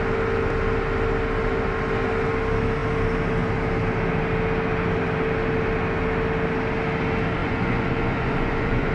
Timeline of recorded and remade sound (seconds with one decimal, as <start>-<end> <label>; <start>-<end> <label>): 0.0-7.4 recorded; 7.4-8.9 remade